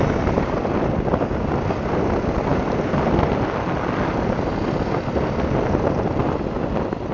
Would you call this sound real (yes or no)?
yes